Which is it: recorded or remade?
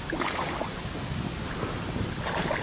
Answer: recorded